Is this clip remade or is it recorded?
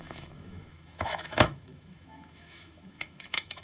remade